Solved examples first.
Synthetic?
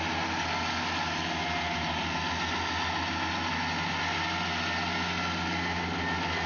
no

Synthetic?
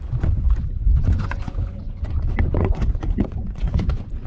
yes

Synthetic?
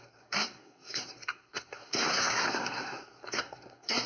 yes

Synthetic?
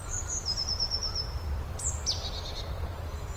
yes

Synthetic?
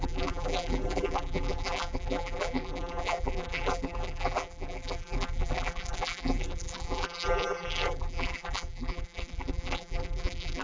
yes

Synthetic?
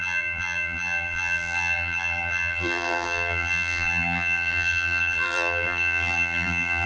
yes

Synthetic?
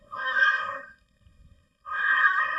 yes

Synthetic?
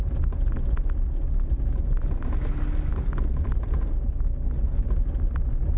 no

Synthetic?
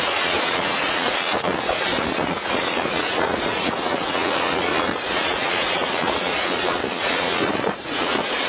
yes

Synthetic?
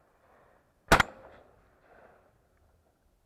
no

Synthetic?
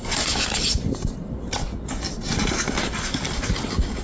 no